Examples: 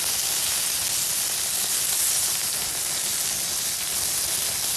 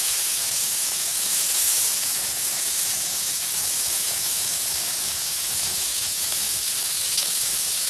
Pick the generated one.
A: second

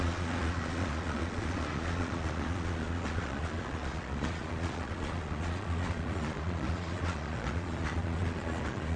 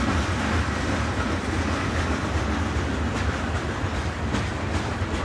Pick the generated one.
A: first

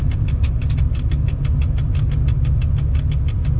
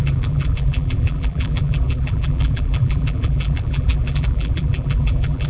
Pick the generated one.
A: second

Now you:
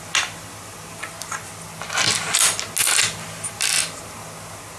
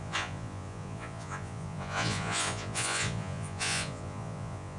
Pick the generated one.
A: second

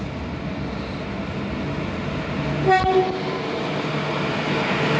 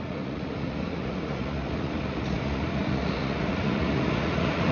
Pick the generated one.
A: second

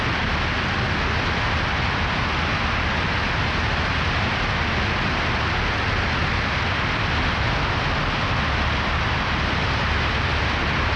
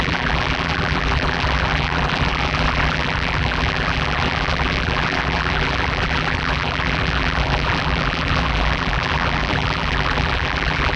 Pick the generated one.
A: second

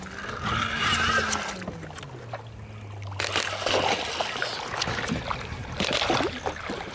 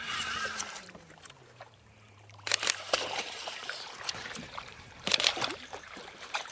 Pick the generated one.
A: second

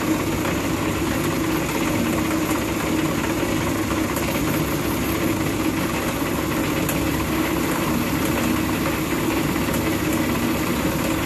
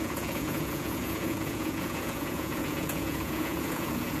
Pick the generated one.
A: second